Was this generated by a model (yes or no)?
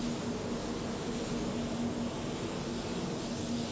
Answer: no